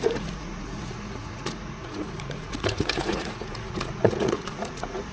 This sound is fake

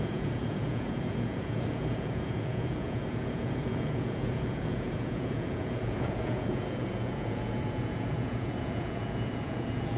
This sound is fake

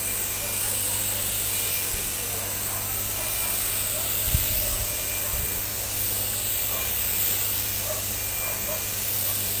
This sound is real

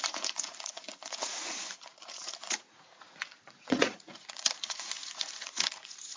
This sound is fake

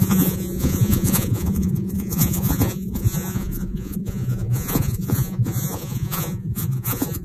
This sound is fake